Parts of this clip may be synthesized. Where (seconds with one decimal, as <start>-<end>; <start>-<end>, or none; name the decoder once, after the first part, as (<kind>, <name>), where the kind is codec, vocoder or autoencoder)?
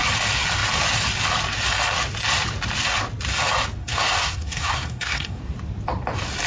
3.8-5.4 (codec, SNAC)